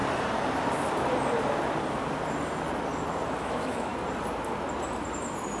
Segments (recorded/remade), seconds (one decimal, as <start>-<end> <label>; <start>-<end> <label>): 0.0-3.4 recorded; 3.4-3.9 remade; 3.9-5.6 recorded